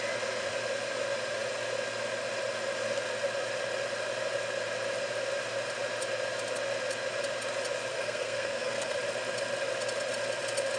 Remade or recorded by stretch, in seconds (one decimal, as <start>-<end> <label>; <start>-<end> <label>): 0.0-7.9 recorded; 7.9-9.0 remade; 9.0-10.8 recorded